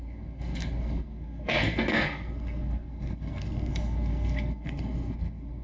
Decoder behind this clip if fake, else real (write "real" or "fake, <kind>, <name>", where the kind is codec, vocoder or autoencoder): fake, codec, SNAC